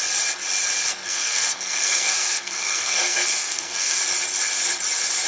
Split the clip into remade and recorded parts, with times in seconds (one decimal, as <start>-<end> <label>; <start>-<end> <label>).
0.0-0.9 recorded; 0.9-4.0 remade; 4.0-5.3 recorded